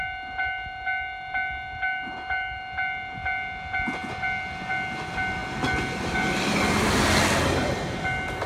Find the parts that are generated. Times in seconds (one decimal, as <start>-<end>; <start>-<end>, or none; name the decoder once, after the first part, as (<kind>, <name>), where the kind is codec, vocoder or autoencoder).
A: none